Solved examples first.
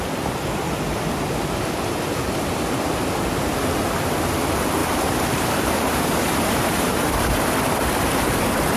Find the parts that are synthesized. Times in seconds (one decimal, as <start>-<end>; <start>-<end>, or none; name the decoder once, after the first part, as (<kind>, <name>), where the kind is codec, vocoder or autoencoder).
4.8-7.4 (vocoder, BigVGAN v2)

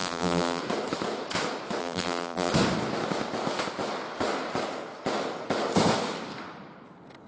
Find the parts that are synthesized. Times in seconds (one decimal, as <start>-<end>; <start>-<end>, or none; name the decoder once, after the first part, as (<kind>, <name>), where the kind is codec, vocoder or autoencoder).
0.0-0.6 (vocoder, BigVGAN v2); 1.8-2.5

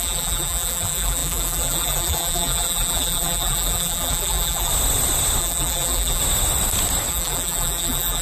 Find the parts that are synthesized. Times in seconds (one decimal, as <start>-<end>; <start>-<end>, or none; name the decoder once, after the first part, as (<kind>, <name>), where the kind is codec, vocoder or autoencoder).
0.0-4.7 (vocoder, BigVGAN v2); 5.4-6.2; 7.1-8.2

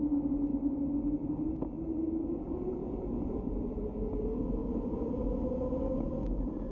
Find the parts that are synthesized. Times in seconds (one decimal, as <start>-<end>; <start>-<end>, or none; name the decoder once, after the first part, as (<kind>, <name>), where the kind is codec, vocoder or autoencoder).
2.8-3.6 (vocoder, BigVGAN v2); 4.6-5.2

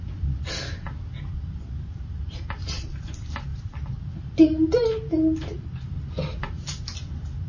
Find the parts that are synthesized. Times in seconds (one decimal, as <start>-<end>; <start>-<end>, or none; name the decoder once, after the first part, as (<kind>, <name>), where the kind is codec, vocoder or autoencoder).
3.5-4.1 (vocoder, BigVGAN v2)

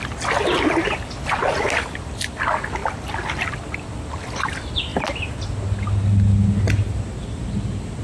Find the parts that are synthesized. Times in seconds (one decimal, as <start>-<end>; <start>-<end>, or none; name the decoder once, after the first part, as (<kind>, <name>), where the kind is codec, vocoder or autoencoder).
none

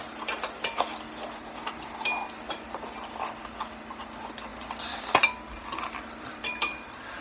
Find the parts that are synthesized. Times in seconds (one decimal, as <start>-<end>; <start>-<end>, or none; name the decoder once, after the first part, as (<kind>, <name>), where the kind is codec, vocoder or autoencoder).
none